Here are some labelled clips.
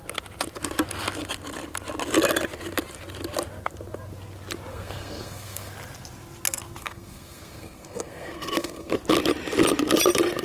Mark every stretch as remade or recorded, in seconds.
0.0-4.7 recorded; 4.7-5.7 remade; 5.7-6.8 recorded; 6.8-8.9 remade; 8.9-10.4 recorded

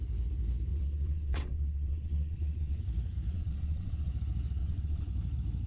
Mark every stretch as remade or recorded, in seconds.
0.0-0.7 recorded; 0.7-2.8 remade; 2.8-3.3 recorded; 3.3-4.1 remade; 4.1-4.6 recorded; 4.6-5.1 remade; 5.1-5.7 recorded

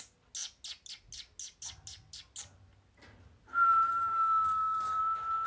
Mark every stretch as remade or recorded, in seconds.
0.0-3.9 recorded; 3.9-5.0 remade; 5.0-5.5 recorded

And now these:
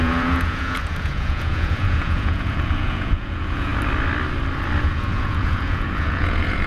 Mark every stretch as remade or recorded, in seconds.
0.0-3.7 remade; 3.7-4.8 recorded; 4.8-6.7 remade

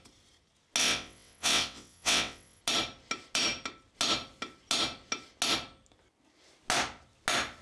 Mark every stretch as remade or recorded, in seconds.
0.0-0.8 recorded; 0.8-2.6 remade; 2.6-7.6 recorded

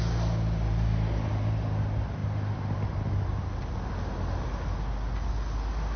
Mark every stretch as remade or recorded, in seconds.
0.0-6.0 recorded

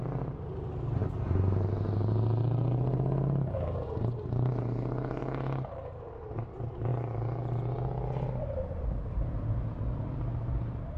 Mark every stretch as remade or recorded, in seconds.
0.0-6.9 remade; 6.9-8.8 recorded; 8.8-11.0 remade